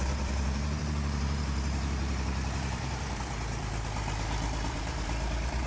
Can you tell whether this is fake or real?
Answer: fake